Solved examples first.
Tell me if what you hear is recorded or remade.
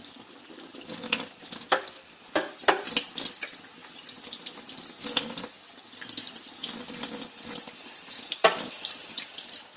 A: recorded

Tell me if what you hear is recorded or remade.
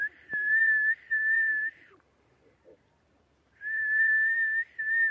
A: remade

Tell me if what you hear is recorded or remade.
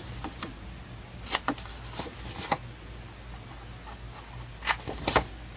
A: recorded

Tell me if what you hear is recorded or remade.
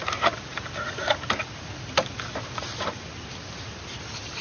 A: recorded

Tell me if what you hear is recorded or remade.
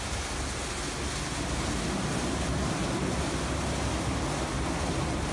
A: recorded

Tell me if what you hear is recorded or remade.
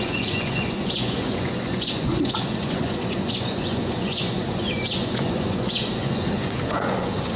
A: remade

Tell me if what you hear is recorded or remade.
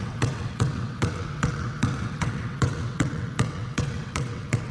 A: remade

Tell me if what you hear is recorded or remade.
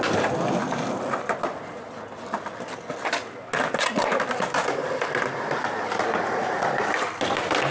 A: recorded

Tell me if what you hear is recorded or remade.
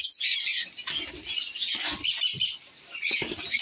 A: recorded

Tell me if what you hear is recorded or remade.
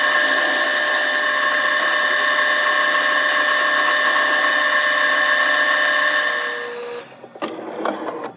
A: recorded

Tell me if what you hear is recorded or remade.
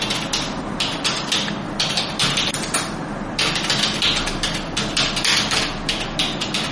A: recorded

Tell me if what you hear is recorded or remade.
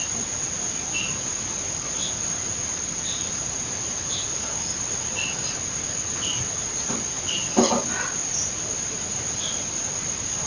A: recorded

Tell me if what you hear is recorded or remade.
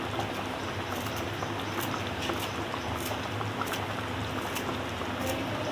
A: recorded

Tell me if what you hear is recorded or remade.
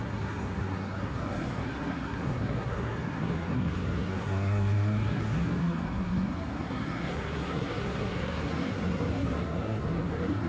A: remade